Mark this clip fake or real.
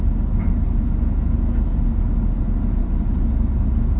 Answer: real